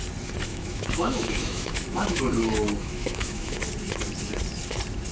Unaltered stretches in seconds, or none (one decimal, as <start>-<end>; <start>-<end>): 0.0-0.5; 2.2-2.8; 3.6-5.1